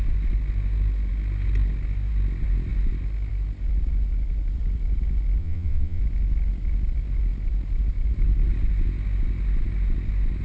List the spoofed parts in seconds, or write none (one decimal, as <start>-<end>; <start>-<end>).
5.4-6.0